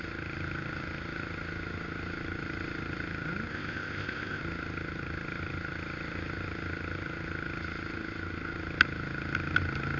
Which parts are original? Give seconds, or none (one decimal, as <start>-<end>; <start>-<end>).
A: 0.0-3.5; 4.4-10.0